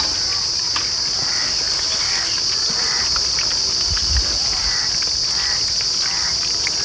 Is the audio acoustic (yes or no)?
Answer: yes